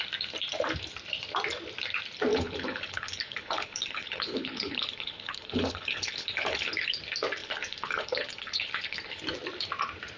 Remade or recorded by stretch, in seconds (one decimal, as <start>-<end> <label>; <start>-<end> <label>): 0.0-2.3 recorded; 2.3-7.0 remade; 7.0-7.4 recorded; 7.4-9.2 remade; 9.2-10.2 recorded